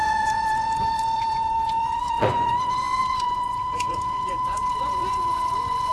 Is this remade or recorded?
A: remade